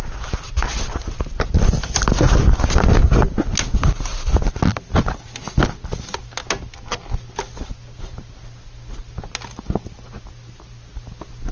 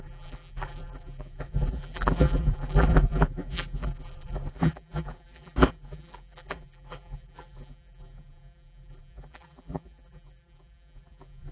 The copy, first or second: second